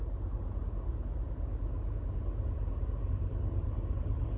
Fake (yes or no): no